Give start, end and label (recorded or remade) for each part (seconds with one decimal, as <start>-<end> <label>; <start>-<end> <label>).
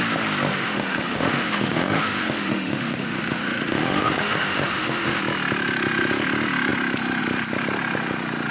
0.0-0.5 recorded; 0.5-5.2 remade; 5.2-8.5 recorded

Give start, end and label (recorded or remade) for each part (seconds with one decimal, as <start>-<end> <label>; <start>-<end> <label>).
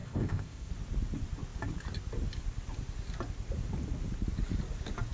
0.0-0.7 remade; 0.7-5.1 recorded